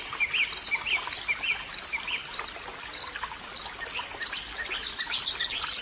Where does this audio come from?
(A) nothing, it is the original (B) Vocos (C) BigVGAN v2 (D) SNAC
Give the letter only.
A